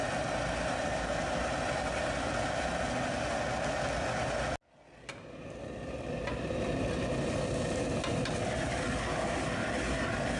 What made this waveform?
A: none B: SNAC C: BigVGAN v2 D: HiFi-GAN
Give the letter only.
A